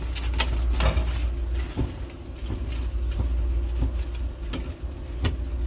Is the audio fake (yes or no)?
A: no